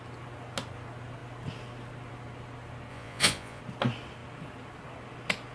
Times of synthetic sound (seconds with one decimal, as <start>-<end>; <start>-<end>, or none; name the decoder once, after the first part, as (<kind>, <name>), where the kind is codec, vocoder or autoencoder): 2.9-3.6 (vocoder, Vocos)